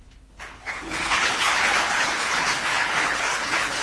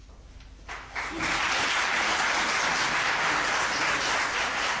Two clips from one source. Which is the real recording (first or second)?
second